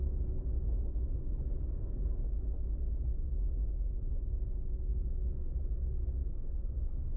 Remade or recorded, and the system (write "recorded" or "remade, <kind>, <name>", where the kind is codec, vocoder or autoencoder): recorded